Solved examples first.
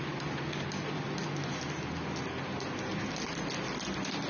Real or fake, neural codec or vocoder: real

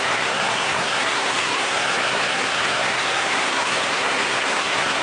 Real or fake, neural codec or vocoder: fake, codec, SNAC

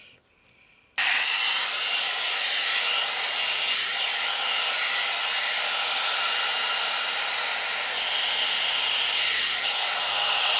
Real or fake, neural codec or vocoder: fake, vocoder, BigVGAN v2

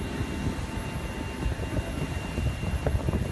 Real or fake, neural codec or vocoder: real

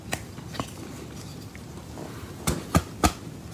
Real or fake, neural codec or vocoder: real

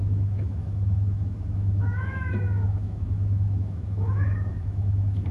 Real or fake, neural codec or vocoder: fake, autoencoder, DAC-VAE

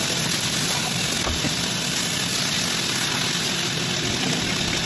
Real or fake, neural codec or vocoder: real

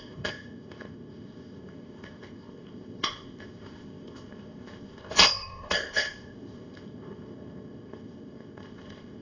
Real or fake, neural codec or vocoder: fake, codec, ZipCodec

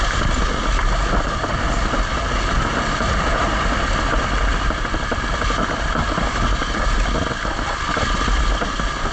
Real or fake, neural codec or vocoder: real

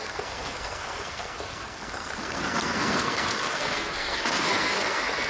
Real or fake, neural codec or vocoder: fake, codec, SNAC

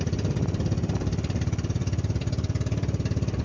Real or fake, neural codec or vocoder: fake, vocoder, BigVGAN v2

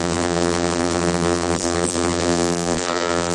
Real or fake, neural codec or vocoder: fake, vocoder, BigVGAN v2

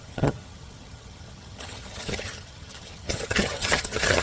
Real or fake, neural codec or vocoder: fake, vocoder, HiFi-GAN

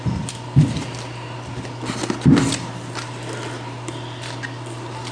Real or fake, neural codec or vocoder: real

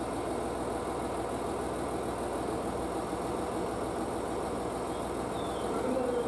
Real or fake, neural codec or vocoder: real